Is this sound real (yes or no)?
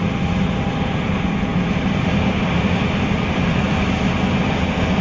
yes